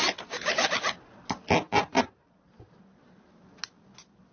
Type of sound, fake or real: real